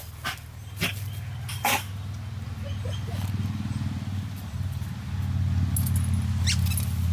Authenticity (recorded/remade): recorded